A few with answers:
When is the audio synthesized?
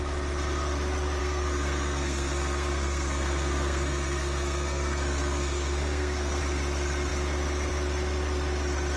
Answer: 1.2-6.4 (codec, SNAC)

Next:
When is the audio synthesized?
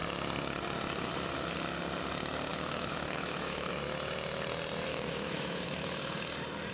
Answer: 2.5-3.7 (autoencoder, DAC-VAE); 4.9-6.2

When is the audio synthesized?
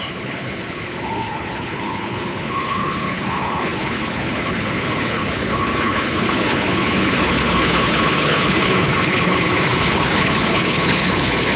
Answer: 0.0-11.6 (codec, HILCodec)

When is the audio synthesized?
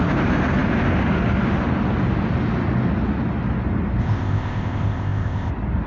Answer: 4.0-5.5 (codec, ZipCodec)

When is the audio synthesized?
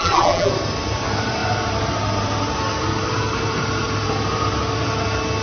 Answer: 0.0-0.5 (vocoder, BigVGAN v2)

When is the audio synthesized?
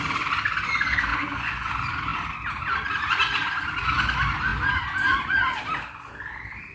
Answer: 1.1-1.7 (vocoder, Vocos)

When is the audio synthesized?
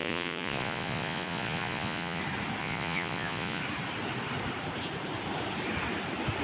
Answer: 0.0-2.2 (vocoder, Vocos); 2.6-3.6